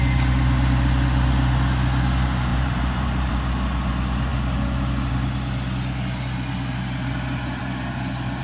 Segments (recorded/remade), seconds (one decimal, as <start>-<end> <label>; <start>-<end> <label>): 0.0-2.5 recorded; 2.5-3.3 remade; 3.3-8.4 recorded